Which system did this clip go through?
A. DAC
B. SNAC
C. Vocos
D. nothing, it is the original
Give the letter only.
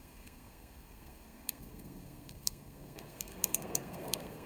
B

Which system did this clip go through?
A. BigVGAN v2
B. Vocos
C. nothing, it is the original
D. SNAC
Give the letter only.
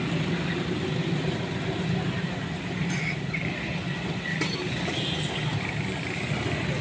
C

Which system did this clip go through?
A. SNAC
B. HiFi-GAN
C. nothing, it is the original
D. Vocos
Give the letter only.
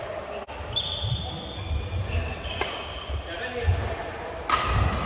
C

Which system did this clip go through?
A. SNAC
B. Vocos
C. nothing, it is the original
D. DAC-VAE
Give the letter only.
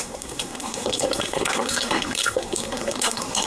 A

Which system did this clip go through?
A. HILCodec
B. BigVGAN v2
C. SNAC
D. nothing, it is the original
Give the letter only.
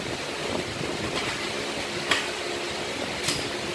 D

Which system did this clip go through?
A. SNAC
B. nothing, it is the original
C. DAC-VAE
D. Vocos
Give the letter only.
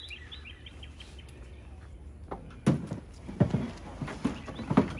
B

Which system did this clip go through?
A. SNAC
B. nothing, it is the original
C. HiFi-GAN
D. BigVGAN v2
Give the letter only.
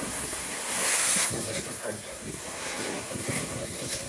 A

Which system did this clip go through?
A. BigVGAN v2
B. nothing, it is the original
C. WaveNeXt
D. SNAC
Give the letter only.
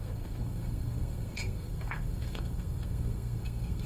D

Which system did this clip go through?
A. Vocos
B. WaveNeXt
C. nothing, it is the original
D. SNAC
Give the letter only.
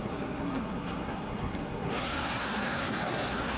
D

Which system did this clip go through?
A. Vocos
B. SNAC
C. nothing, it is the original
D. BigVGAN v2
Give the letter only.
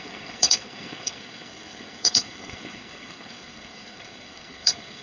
B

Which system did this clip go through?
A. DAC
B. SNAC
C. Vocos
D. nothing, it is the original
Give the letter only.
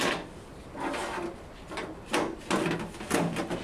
D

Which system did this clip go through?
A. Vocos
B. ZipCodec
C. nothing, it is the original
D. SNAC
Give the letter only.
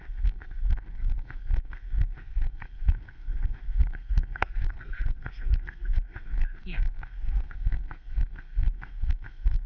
D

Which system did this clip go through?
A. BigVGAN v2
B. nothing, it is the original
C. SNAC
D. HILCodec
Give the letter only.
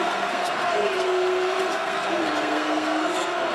C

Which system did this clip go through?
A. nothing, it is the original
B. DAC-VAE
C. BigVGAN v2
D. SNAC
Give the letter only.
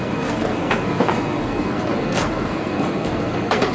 D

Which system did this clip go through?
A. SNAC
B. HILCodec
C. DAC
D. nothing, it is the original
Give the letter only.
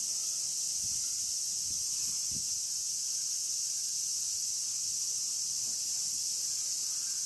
D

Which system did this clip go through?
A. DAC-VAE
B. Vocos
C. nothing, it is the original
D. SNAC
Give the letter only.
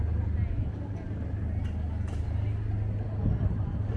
C